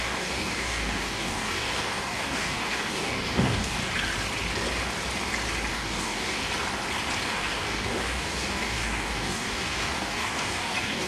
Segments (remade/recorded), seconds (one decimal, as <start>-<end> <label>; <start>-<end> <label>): 0.0-3.8 remade; 3.8-5.7 recorded; 5.7-6.4 remade; 6.4-7.2 recorded; 7.2-11.1 remade